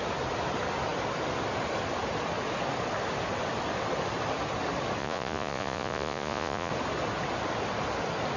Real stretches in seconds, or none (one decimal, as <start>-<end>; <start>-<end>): 0.0-5.0; 6.7-8.4

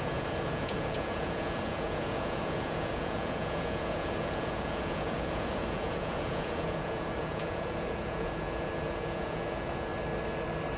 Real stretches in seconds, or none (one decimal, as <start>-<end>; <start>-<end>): 9.9-10.8

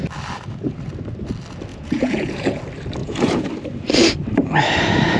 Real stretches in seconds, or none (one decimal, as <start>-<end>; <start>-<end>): 0.0-1.7; 2.6-3.0; 3.5-5.2